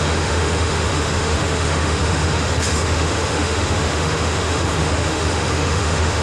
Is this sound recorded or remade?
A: remade